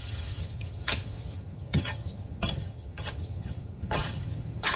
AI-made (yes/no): yes